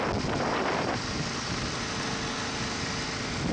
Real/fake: real